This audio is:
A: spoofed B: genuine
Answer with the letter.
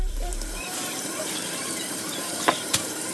A